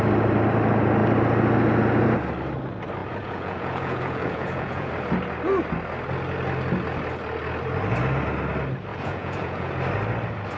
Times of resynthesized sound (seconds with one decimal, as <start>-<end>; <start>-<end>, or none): 3.0-4.9; 8.9-9.7